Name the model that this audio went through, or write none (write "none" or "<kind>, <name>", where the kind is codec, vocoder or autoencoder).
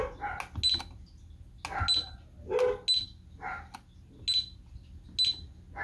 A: none